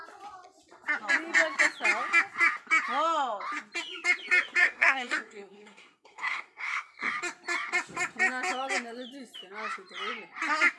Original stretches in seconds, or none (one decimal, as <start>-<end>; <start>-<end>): 0.0-4.6; 7.1-10.8